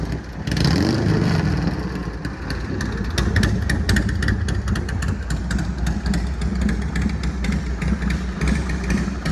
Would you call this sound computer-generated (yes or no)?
no